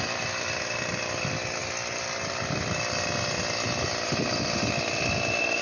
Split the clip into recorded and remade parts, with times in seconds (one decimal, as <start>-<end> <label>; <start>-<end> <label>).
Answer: 0.0-5.6 recorded